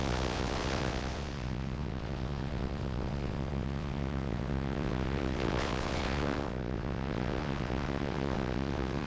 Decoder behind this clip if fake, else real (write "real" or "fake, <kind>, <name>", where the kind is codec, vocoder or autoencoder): fake, vocoder, WaveNeXt